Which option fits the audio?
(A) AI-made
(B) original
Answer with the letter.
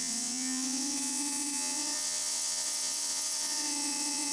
A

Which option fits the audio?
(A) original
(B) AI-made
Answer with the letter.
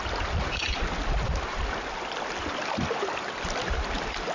A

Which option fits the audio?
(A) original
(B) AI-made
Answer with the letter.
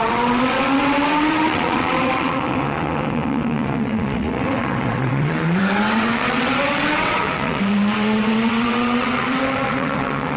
B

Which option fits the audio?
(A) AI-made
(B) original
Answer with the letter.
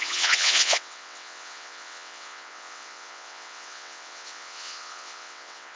A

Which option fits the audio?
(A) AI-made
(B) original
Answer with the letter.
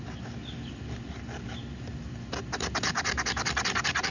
B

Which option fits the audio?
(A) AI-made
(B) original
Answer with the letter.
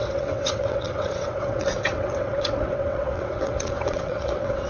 A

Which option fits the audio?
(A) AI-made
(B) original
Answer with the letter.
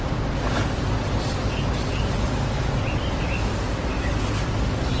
B